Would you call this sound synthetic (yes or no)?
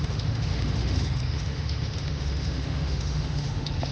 yes